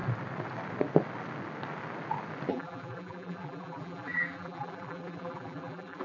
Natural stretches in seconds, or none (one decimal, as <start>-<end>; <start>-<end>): 0.0-2.5